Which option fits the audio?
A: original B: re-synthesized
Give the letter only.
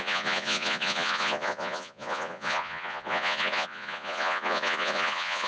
B